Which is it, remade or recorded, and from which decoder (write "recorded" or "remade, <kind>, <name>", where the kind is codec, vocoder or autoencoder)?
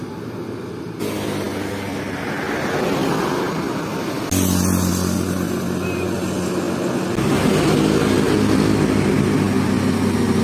recorded